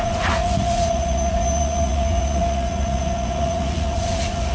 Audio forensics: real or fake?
fake